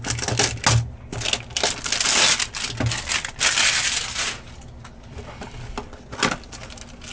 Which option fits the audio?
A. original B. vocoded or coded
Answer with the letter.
A